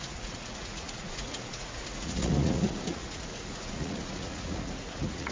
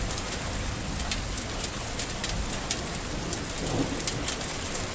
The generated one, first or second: first